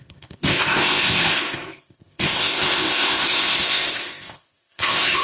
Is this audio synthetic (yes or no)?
yes